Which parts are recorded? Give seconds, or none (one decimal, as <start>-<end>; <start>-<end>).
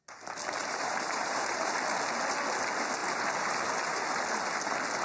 0.0-0.6; 1.7-3.0; 3.5-5.0